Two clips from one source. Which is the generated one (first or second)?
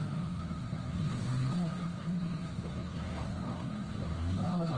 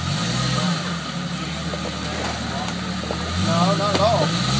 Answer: first